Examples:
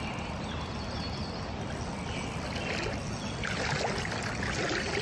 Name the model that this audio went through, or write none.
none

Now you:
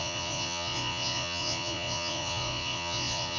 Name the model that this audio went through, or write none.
vocoder, Vocos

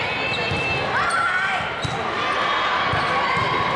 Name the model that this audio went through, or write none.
none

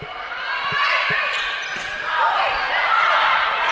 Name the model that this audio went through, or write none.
none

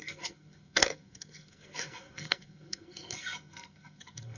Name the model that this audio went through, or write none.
codec, SNAC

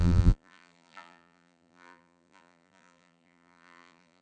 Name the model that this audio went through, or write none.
vocoder, BigVGAN v2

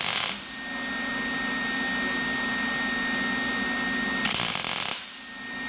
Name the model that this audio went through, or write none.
none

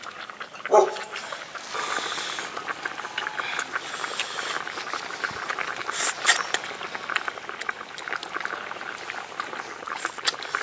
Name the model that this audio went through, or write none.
none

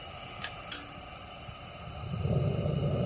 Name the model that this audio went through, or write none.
none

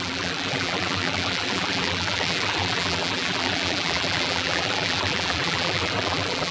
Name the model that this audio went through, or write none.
vocoder, BigVGAN v2